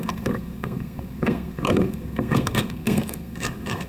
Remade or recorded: remade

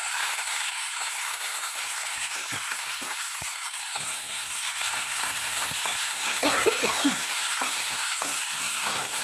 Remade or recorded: remade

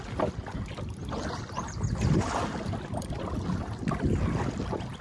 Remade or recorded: recorded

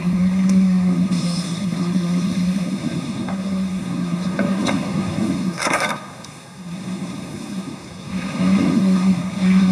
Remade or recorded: remade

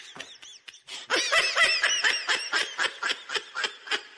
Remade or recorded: recorded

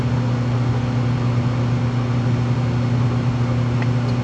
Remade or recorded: recorded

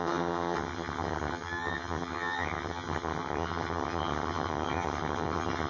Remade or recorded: remade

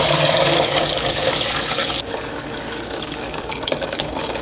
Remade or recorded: remade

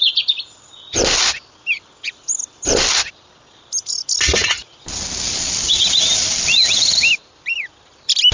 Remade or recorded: recorded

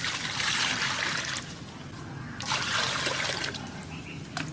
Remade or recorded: recorded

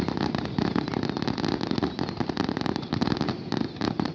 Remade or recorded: recorded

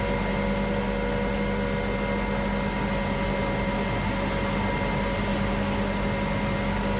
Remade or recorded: recorded